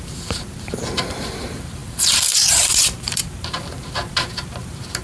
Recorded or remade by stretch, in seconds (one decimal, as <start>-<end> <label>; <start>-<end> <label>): 0.0-5.0 remade